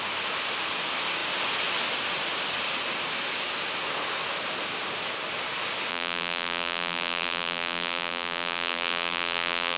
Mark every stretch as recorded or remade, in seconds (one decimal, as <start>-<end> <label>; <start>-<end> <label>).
0.0-5.9 recorded; 5.9-9.8 remade